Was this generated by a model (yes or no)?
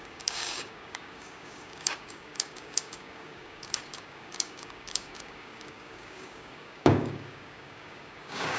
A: yes